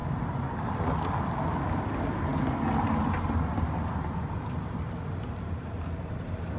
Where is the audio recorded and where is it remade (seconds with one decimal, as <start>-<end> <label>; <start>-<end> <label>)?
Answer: 0.0-0.9 remade; 0.9-6.6 recorded